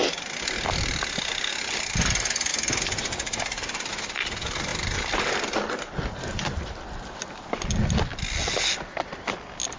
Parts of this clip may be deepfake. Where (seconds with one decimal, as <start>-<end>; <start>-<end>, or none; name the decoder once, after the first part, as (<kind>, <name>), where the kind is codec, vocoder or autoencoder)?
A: 2.5-3.9 (vocoder, BigVGAN v2); 4.7-7.7

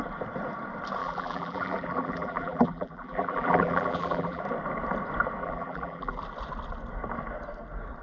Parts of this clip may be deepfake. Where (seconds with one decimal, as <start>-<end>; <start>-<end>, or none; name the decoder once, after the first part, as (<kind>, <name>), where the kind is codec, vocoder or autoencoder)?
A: 1.0-4.4 (vocoder, BigVGAN v2); 5.4-6.2

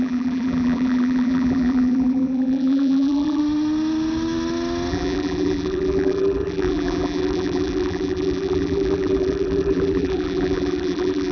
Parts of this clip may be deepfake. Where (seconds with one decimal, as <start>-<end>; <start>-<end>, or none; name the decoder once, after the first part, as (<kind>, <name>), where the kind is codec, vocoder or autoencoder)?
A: 0.0-3.4 (vocoder, BigVGAN v2); 4.9-11.3

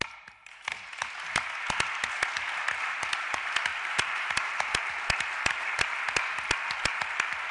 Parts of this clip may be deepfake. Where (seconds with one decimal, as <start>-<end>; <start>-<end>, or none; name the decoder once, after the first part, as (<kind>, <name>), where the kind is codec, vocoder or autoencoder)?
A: 3.7-4.9 (vocoder, BigVGAN v2)

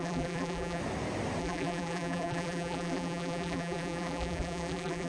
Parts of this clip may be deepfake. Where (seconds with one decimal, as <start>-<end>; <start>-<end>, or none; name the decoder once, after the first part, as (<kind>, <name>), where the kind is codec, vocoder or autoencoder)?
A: 0.0-0.8 (vocoder, BigVGAN v2); 1.4-5.1

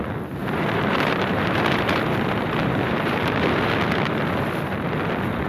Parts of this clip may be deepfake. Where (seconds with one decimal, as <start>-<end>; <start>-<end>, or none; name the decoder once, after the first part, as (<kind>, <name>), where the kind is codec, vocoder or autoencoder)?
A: 0.4-3.7 (vocoder, BigVGAN v2)